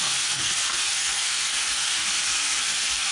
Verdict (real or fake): fake